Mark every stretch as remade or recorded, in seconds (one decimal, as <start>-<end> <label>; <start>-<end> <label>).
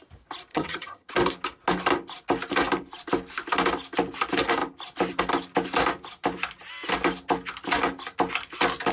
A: 0.0-0.5 recorded; 0.5-1.1 remade; 1.1-8.9 recorded